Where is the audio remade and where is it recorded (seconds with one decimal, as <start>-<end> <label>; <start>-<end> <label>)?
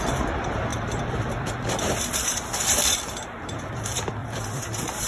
0.0-0.7 recorded; 0.7-3.7 remade; 3.7-4.2 recorded; 4.2-5.1 remade